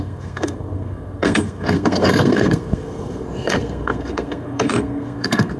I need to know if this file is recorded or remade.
remade